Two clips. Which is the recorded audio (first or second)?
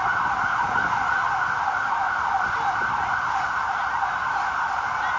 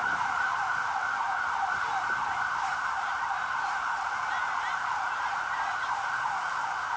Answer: first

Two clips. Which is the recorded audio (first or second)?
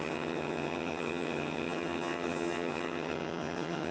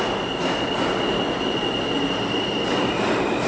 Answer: second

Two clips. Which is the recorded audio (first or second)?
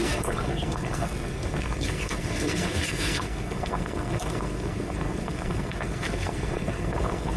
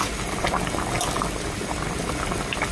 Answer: second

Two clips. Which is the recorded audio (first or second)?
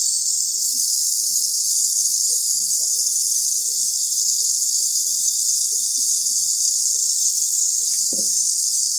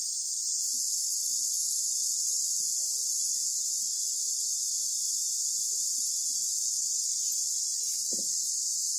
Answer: second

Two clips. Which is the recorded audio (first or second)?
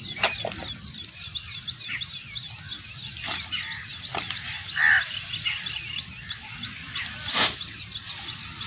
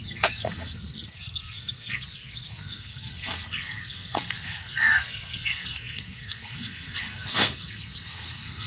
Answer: first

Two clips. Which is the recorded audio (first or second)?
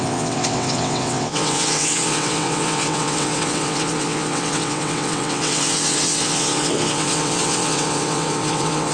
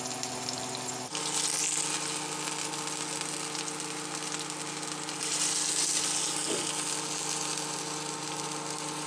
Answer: second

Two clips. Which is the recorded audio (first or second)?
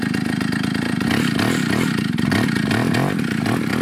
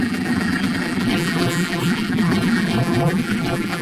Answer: first